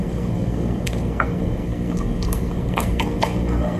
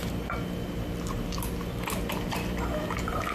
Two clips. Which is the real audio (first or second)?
second